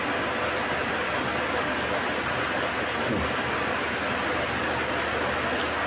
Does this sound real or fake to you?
real